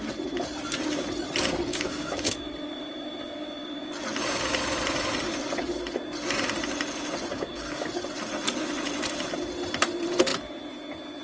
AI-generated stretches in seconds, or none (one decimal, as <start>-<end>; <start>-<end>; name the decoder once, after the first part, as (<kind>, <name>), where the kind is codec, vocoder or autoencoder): 1.7-3.9 (codec, DAC); 7.3-7.9

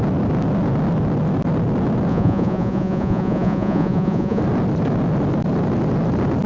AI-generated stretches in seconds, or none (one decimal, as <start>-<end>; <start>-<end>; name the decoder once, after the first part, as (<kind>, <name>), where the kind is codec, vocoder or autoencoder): 2.1-4.4 (vocoder, Vocos)

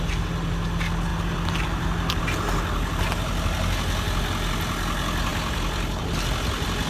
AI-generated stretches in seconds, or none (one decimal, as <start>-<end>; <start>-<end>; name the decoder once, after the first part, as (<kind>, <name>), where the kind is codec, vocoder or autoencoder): none

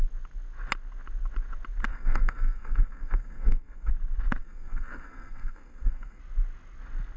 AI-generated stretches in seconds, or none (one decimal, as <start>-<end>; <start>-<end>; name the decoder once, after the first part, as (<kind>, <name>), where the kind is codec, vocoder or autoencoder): 1.9-3.9 (codec, SNAC); 4.4-6.2

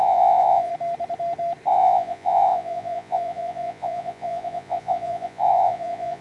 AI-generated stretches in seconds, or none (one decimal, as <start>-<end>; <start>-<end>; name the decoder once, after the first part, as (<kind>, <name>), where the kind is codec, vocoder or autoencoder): 0.0-0.7 (vocoder, Vocos); 1.7-6.2